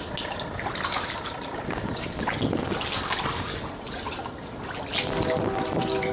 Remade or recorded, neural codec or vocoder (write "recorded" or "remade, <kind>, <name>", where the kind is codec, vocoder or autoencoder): recorded